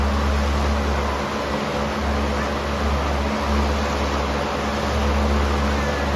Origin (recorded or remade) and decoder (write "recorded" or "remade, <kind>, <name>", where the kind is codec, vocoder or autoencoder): recorded